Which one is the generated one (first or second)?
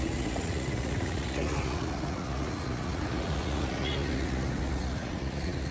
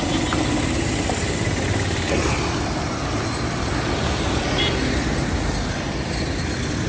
first